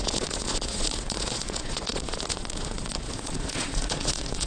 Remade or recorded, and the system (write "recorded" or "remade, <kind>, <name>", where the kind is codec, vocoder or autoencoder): remade, vocoder, Vocos